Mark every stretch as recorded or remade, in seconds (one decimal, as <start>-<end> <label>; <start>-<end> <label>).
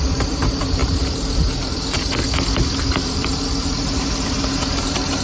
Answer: 0.0-0.8 remade; 0.8-1.4 recorded; 1.4-2.2 remade; 2.2-3.0 recorded; 3.0-5.2 remade